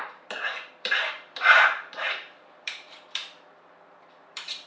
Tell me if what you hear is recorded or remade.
remade